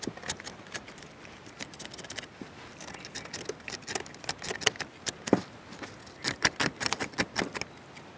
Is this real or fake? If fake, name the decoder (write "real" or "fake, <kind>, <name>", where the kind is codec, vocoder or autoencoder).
real